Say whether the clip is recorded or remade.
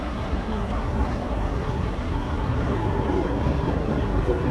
remade